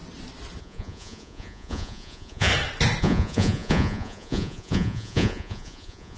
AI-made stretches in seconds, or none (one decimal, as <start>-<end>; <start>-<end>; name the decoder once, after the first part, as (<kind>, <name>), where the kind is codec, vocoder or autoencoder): 0.6-2.5 (vocoder, Vocos); 3.0-6.2